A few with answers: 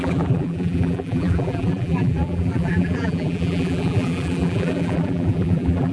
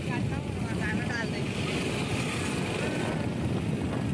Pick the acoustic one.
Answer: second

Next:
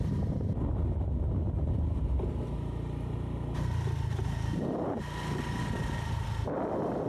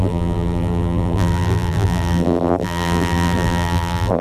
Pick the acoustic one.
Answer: first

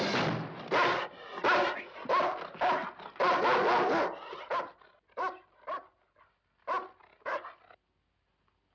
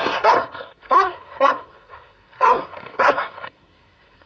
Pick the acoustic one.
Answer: first